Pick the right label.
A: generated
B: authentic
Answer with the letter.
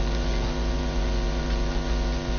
A